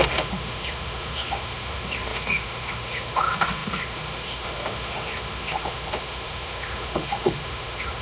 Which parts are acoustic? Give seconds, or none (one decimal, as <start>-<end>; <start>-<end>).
none